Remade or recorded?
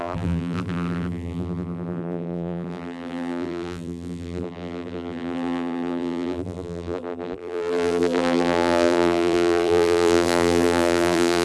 remade